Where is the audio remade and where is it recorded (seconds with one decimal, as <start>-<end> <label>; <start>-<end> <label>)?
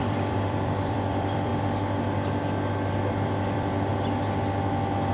0.0-1.5 remade; 1.5-2.9 recorded; 2.9-3.9 remade; 3.9-5.1 recorded